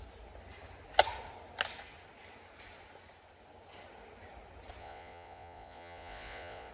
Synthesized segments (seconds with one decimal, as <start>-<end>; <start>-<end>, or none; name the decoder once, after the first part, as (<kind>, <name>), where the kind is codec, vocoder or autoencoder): 4.8-6.7 (vocoder, Vocos)